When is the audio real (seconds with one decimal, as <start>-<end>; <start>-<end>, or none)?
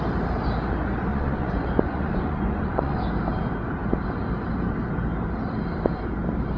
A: 0.0-1.1; 3.0-6.6